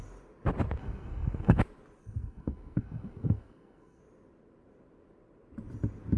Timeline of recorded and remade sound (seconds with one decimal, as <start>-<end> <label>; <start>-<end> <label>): 0.0-0.8 recorded; 0.8-1.6 remade; 1.6-2.0 recorded; 2.0-4.0 remade; 4.0-6.2 recorded